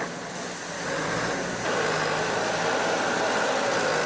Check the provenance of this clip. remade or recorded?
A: recorded